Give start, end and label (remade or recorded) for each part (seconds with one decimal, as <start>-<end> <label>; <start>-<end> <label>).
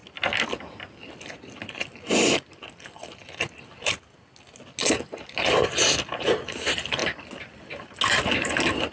0.0-8.9 recorded